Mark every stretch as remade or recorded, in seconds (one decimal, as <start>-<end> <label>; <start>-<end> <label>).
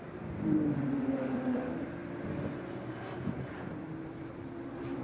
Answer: 0.0-2.0 remade; 2.0-3.7 recorded; 3.7-5.0 remade